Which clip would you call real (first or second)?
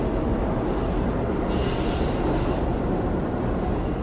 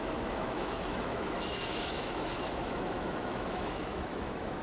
first